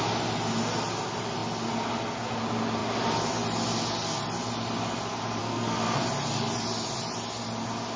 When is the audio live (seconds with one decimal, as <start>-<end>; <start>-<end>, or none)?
0.0-5.4; 6.0-8.0